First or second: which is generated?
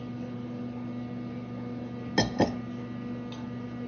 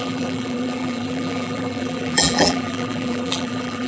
second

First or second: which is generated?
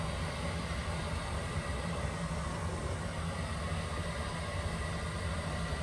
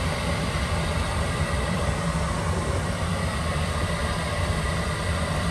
second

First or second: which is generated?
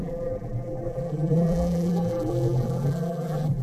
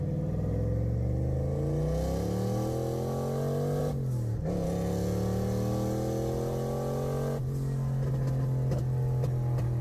first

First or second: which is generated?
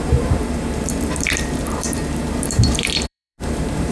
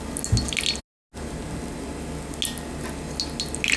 first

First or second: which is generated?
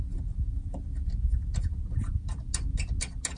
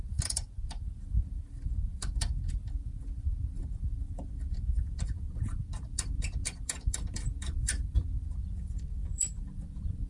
second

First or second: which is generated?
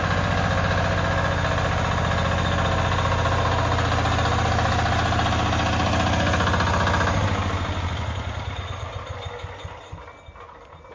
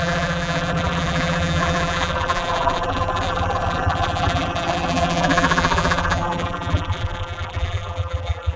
second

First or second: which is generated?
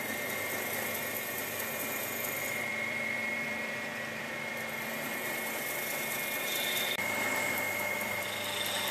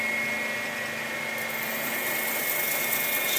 first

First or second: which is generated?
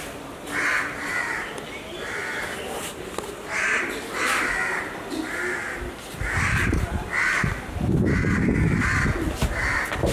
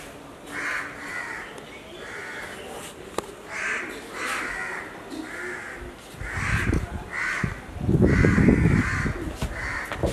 first